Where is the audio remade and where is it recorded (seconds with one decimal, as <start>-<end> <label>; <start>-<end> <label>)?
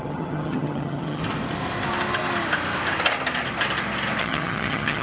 0.0-1.2 remade; 1.2-4.2 recorded; 4.2-5.0 remade